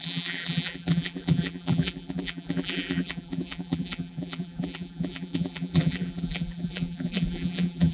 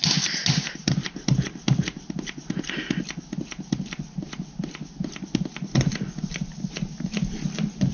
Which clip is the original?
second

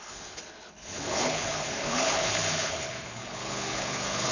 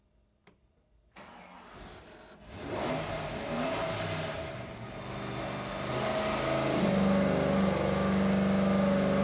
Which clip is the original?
second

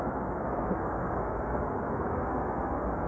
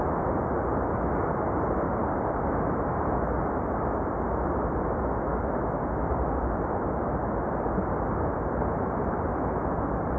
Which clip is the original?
second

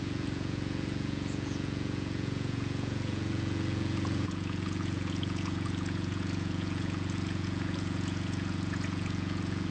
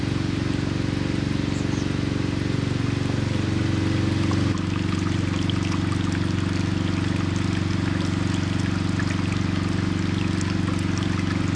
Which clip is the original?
second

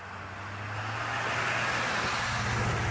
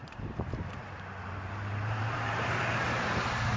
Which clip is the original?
first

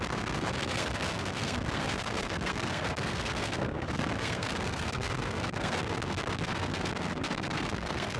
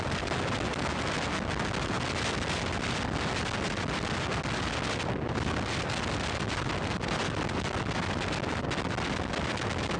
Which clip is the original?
second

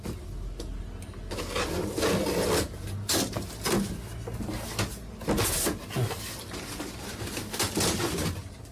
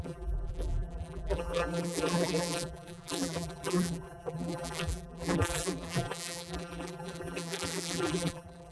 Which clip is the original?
first